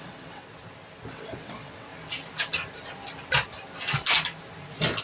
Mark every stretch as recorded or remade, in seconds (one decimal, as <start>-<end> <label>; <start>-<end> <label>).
0.0-0.4 remade; 0.4-1.1 recorded; 1.1-1.9 remade; 1.9-5.0 recorded